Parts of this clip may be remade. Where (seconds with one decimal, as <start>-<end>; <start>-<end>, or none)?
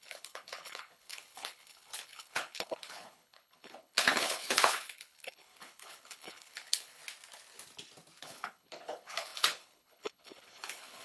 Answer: 0.0-7.0; 8.2-11.0